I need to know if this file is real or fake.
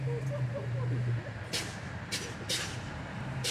real